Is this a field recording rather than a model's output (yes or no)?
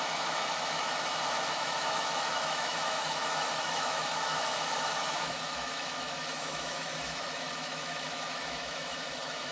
no